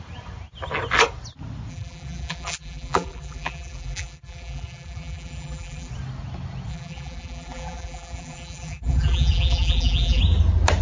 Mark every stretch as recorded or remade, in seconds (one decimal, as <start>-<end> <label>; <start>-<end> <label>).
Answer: 0.0-1.7 recorded; 1.7-5.9 remade; 5.9-6.7 recorded; 6.7-10.2 remade; 10.2-10.8 recorded